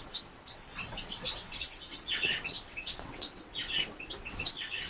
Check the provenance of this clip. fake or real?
fake